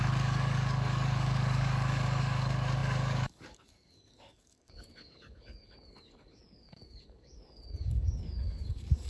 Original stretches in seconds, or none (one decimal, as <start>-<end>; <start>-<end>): none